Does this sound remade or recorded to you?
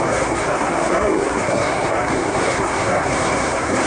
remade